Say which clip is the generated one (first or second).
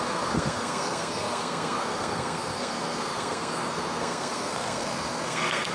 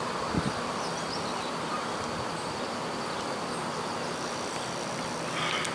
first